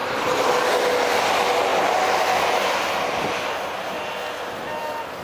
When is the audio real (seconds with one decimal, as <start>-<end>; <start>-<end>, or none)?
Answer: 0.0-5.2